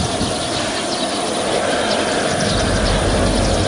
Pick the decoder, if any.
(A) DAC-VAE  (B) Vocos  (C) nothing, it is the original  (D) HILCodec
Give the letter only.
C